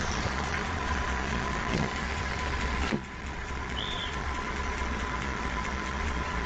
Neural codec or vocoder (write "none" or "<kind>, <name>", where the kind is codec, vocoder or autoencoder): vocoder, Vocos